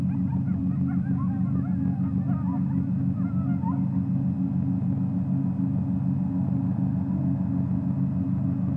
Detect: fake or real real